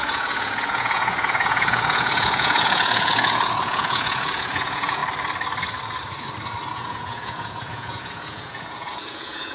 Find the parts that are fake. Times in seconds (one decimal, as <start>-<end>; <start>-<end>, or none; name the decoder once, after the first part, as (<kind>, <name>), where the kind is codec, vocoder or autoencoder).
0.0-5.0 (vocoder, Vocos); 6.7-9.5